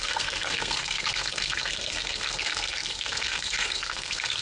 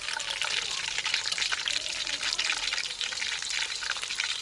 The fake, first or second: first